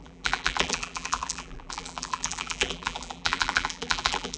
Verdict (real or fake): fake